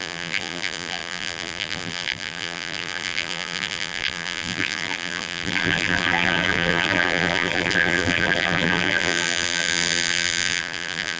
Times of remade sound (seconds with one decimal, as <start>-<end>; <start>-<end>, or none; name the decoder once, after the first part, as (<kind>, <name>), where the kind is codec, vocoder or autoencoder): 0.0-11.2 (vocoder, BigVGAN v2)